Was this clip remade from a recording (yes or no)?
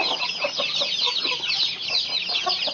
no